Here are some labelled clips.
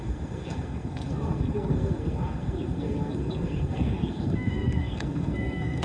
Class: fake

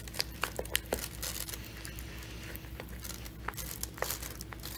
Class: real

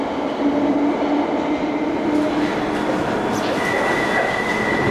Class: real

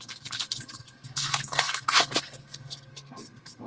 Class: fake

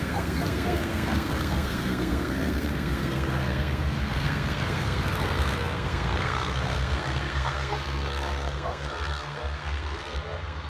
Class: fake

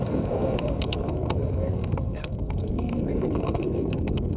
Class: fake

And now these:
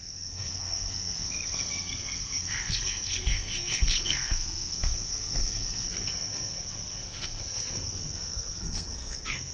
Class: fake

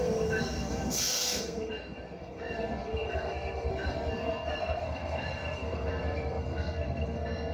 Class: fake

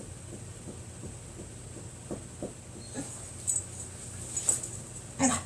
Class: real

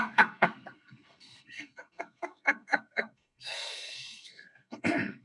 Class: fake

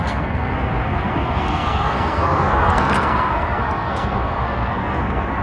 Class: fake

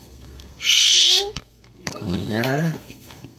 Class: fake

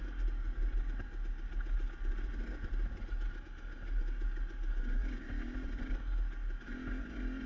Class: real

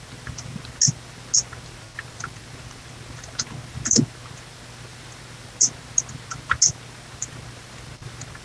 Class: real